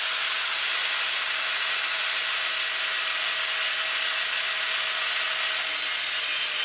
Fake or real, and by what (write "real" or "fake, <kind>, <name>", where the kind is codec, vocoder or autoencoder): real